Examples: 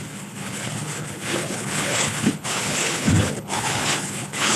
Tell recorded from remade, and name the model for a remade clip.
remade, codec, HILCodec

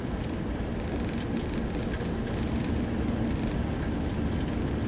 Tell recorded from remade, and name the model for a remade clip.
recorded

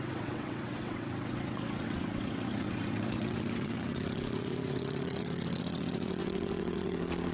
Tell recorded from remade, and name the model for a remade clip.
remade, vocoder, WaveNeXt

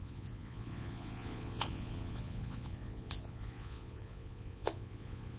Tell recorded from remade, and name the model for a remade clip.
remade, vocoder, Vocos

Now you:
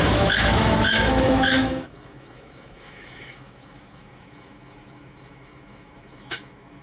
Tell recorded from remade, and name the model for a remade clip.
remade, autoencoder, DAC-VAE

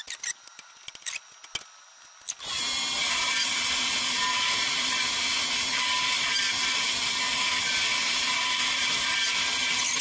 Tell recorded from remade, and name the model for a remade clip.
recorded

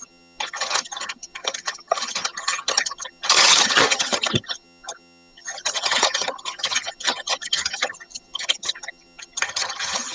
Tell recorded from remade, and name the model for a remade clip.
remade, vocoder, HiFi-GAN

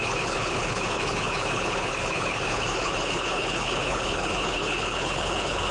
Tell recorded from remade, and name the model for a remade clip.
remade, codec, HILCodec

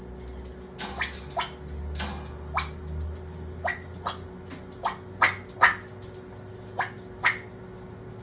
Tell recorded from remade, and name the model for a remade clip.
recorded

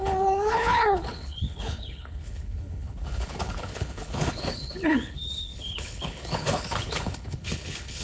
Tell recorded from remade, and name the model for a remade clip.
remade, codec, HILCodec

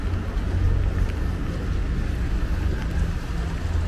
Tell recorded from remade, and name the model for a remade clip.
recorded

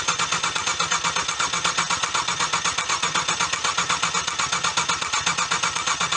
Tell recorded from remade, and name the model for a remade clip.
recorded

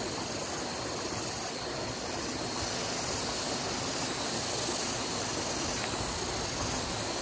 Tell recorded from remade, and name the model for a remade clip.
recorded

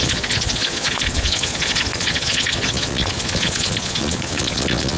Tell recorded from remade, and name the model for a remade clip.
remade, vocoder, Vocos